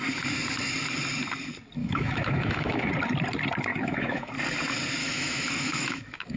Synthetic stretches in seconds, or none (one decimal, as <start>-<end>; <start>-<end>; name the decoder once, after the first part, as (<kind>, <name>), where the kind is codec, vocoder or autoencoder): 1.8-2.9 (autoencoder, DAC-VAE); 3.7-4.3; 5.0-6.4